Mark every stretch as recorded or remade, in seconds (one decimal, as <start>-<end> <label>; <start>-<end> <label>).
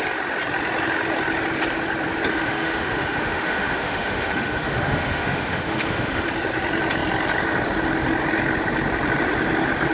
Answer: 0.0-2.3 recorded; 2.3-6.3 remade; 6.3-9.9 recorded